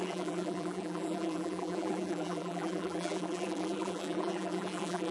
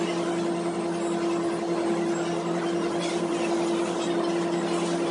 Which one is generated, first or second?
first